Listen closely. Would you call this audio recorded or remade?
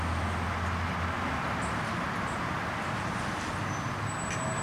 recorded